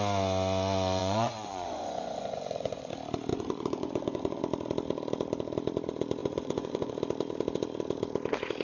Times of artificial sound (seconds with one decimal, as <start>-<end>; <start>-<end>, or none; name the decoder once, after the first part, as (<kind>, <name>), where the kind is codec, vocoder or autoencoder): 1.0-2.9 (vocoder, Vocos); 3.3-4.4; 6.2-6.9